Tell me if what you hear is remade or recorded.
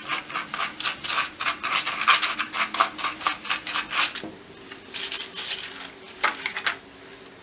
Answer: recorded